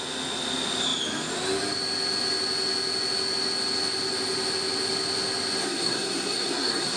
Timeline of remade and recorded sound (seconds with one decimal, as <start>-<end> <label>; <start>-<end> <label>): 0.0-5.6 recorded; 5.6-7.0 remade

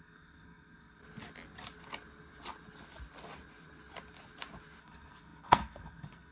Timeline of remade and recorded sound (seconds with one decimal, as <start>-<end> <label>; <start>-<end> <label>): 0.0-1.0 remade; 1.0-4.8 recorded; 4.8-6.3 remade

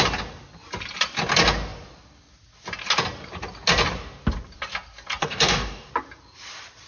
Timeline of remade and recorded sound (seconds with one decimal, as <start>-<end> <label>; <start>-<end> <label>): 0.0-5.2 recorded; 5.2-5.9 remade; 5.9-6.9 recorded

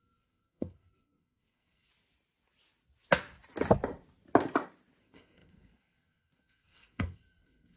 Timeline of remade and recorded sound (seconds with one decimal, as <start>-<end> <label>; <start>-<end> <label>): 0.0-1.9 remade; 1.9-5.0 recorded; 5.0-7.8 remade

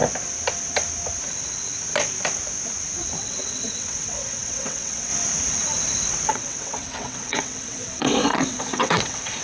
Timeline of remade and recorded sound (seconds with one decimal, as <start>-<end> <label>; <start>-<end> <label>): 0.0-3.2 recorded; 3.2-5.1 remade; 5.1-6.3 recorded; 6.3-9.4 remade

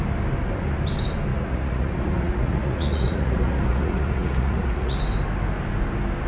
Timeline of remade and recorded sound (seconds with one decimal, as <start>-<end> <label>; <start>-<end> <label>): 0.0-1.3 recorded; 1.3-5.0 remade; 5.0-6.3 recorded

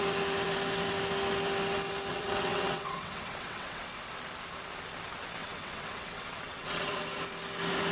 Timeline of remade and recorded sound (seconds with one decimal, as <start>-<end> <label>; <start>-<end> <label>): 0.0-2.1 recorded; 2.1-3.8 remade; 3.8-5.4 recorded; 5.4-7.0 remade; 7.0-7.9 recorded